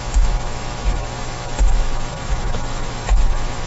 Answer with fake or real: fake